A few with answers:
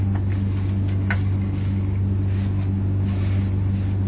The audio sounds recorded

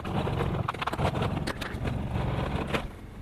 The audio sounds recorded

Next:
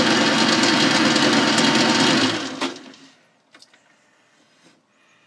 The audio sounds recorded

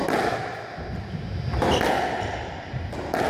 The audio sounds recorded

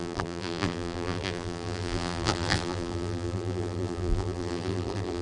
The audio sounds remade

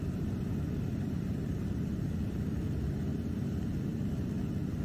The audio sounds remade